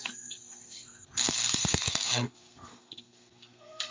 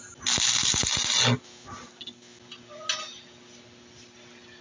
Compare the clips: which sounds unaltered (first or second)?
second